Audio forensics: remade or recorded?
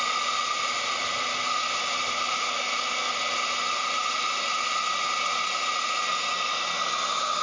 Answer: recorded